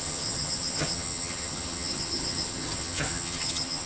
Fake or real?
fake